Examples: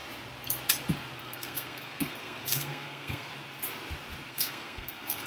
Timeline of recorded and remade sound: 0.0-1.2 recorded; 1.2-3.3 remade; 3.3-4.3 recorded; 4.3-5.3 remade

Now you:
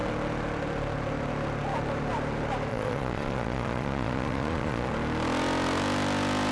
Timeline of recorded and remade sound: 0.0-2.7 recorded; 2.7-4.9 remade; 4.9-6.5 recorded

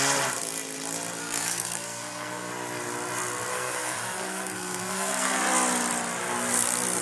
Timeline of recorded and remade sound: 0.0-1.2 recorded; 1.2-2.5 remade; 2.5-3.5 recorded; 3.5-5.4 remade; 5.4-7.0 recorded

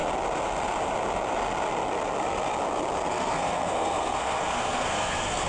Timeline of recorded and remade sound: 0.0-3.1 recorded; 3.1-5.5 remade

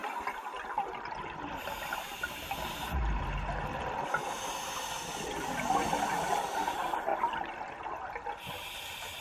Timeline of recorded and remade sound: 0.0-9.2 recorded

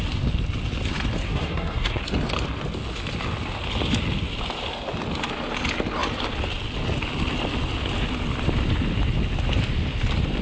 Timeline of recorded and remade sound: 0.0-1.2 recorded; 1.2-2.0 remade; 2.0-10.4 recorded

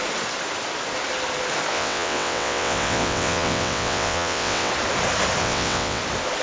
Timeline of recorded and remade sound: 0.0-1.7 recorded; 1.7-4.7 remade; 4.7-5.4 recorded; 5.4-6.0 remade; 6.0-6.4 recorded